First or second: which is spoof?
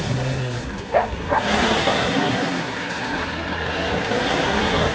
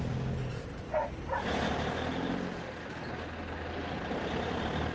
first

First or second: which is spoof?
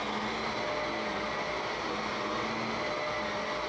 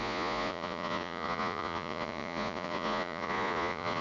second